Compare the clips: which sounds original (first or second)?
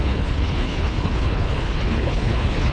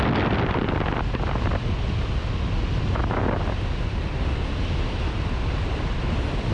second